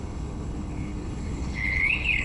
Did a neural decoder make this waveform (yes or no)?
yes